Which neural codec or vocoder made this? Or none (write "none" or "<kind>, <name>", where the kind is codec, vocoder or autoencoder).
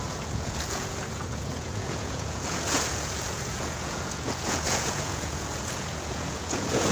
vocoder, Vocos